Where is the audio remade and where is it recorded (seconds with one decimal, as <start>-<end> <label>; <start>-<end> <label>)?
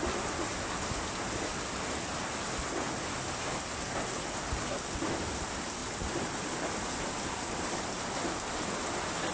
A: 0.0-5.8 recorded; 5.8-7.5 remade; 7.5-9.3 recorded